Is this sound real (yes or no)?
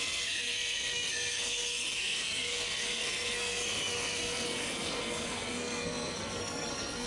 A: no